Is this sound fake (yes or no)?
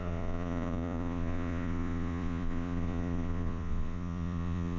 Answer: yes